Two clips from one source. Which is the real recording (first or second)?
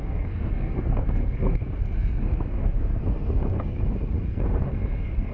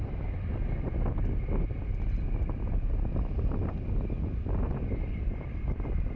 second